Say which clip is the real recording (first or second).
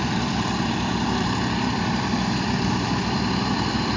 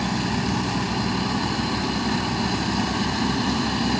second